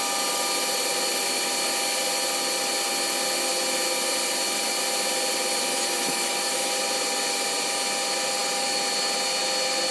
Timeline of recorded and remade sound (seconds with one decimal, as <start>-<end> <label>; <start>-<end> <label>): 0.0-5.7 recorded; 5.7-6.7 remade; 6.7-9.9 recorded